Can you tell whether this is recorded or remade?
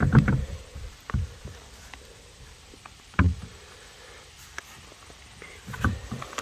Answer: recorded